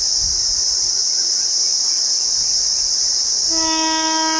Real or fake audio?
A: real